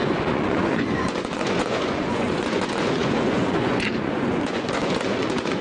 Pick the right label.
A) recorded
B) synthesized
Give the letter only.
B